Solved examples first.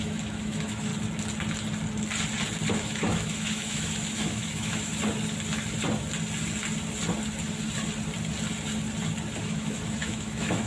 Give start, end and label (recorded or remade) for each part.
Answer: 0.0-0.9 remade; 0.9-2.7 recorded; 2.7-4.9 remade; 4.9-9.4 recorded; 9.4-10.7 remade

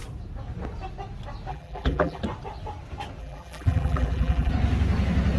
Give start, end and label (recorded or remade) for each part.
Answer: 0.0-1.5 recorded; 1.5-2.2 remade; 2.2-3.2 recorded; 3.2-4.5 remade; 4.5-5.4 recorded

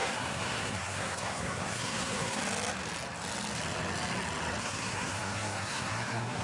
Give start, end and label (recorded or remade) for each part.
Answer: 0.0-2.4 remade; 2.4-4.6 recorded; 4.6-6.4 remade

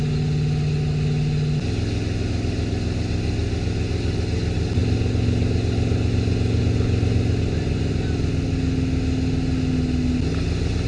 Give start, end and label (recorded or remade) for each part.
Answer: 0.0-10.9 recorded

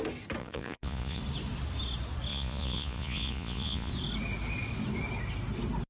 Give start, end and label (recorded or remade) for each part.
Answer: 0.0-0.4 recorded; 0.4-1.2 remade; 1.2-2.3 recorded; 2.3-3.9 remade; 3.9-5.9 recorded

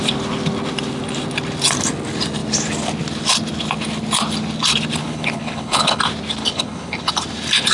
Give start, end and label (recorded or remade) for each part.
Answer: 0.0-5.0 recorded; 5.0-6.0 remade; 6.0-6.4 recorded; 6.4-7.1 remade; 7.1-7.7 recorded

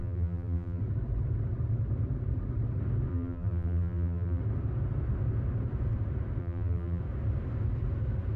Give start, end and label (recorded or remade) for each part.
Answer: 0.0-0.8 remade; 0.8-3.1 recorded; 3.1-4.4 remade; 4.4-6.4 recorded; 6.4-7.0 remade; 7.0-8.4 recorded

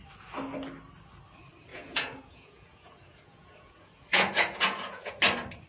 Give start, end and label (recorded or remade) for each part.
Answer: 0.0-1.7 recorded; 1.7-5.1 remade; 5.1-5.7 recorded